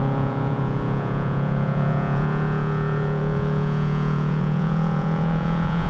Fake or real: fake